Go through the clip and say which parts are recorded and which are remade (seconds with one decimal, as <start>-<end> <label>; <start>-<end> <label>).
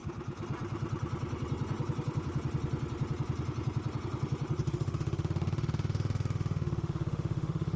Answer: 0.0-4.7 recorded; 4.7-7.8 remade